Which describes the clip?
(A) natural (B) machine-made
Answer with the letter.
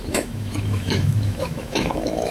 B